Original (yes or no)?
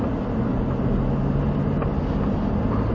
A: yes